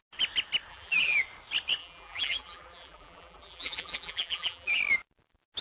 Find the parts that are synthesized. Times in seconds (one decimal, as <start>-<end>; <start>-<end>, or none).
0.7-1.2; 1.8-4.8